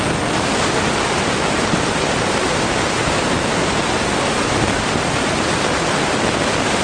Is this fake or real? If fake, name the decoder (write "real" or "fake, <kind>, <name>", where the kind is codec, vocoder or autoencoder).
real